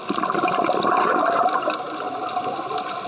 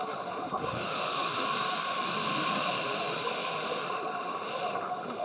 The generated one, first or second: second